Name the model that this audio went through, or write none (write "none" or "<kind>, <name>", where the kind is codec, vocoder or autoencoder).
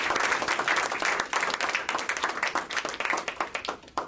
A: none